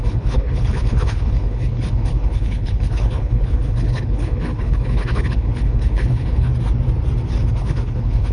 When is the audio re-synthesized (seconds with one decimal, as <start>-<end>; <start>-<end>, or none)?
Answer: 0.0-6.5; 7.5-8.3